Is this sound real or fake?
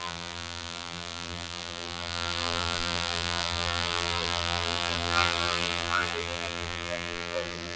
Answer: fake